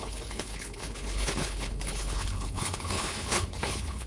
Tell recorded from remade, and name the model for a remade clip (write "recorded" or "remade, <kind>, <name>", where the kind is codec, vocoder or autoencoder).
remade, codec, HILCodec